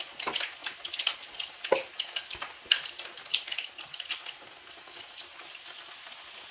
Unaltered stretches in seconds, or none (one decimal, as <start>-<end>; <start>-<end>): 0.0-6.5